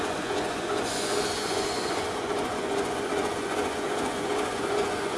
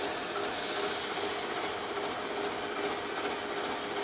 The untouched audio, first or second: second